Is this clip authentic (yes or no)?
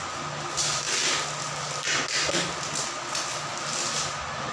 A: yes